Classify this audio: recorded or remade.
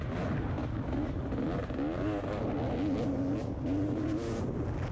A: recorded